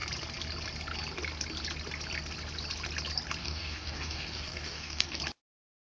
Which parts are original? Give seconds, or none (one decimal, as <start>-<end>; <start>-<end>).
0.0-3.4; 5.2-5.9